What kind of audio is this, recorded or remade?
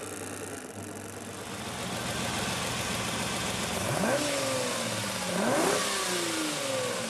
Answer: recorded